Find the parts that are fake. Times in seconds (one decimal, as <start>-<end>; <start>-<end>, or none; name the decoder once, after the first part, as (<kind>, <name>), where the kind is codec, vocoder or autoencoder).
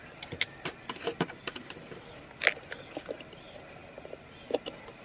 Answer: none